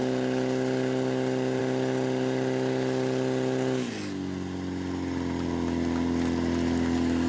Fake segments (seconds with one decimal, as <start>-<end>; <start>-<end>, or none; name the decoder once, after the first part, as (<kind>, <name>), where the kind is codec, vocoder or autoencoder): none